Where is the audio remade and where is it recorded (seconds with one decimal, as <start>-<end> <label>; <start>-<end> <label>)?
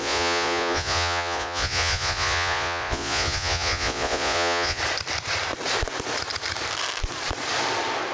0.0-4.8 remade; 4.8-8.1 recorded